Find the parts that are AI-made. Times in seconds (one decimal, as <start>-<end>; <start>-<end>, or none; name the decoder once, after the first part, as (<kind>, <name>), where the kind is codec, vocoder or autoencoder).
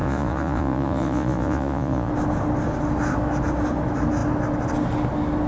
0.0-2.1 (vocoder, Vocos)